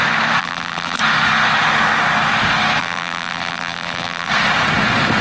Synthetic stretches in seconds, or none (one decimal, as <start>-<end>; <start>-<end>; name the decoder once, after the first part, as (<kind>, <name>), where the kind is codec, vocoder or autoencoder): 0.4-1.0 (vocoder, BigVGAN v2); 2.8-4.3